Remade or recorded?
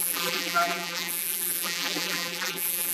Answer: remade